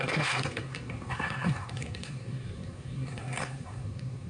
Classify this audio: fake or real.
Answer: fake